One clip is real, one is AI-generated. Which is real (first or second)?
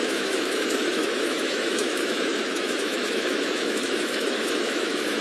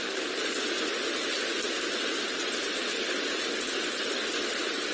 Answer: second